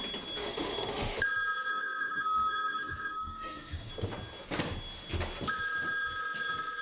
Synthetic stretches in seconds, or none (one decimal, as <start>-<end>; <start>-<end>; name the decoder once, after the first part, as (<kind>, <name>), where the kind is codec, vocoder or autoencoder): 0.4-1.2 (autoencoder, DAC-VAE); 1.7-3.9